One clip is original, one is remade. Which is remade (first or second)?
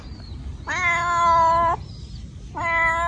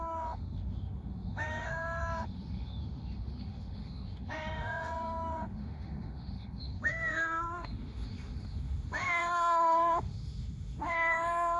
second